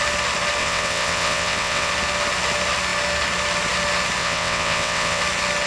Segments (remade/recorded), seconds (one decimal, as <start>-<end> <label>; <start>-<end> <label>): 0.0-0.6 recorded; 0.6-1.9 remade; 1.9-4.2 recorded; 4.2-5.2 remade; 5.2-5.7 recorded